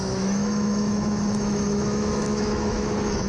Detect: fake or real fake